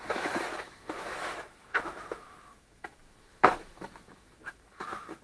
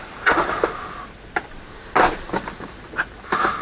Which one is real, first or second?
second